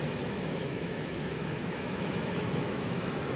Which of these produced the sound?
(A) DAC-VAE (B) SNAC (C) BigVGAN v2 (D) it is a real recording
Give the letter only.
A